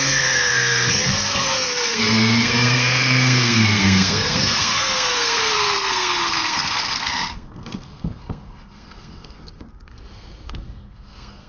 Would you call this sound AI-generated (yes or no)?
yes